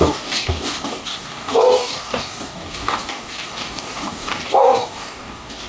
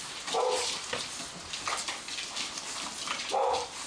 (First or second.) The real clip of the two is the second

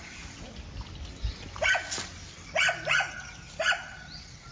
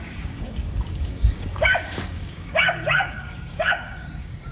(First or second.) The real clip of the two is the first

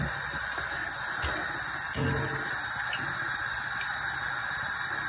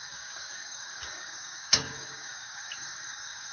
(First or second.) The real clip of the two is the first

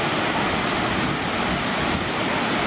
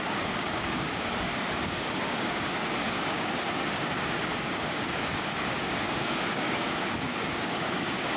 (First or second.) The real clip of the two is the first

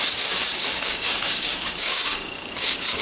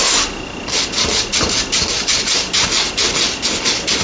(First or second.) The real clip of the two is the second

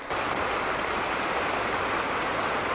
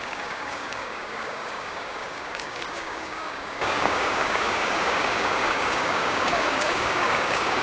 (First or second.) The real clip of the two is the first